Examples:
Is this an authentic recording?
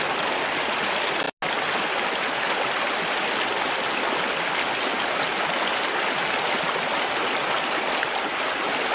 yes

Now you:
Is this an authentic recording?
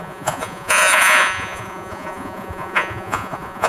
no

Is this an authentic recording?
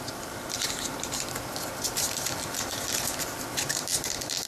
no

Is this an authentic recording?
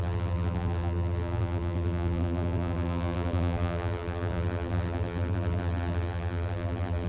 no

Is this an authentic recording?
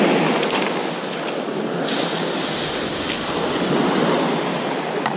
yes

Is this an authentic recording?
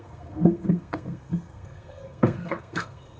no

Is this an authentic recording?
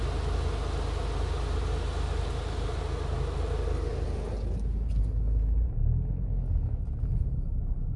yes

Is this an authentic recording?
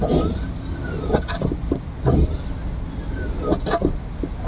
yes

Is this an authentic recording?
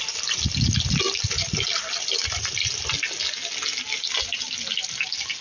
yes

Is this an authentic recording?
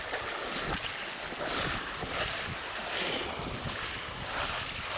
yes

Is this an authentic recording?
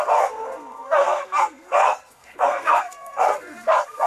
no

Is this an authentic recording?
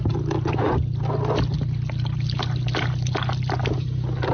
yes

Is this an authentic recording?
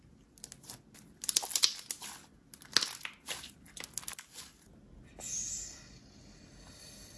yes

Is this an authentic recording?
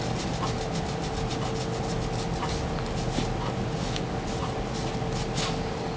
yes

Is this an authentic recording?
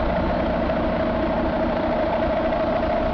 yes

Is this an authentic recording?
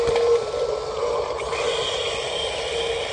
yes